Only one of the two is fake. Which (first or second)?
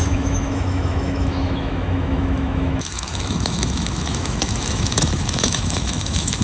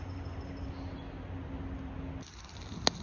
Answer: first